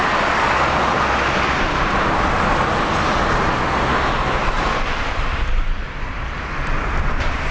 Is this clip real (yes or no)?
yes